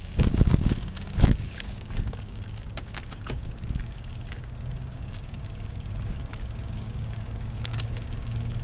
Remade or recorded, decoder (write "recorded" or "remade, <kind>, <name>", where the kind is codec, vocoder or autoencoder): remade, codec, DAC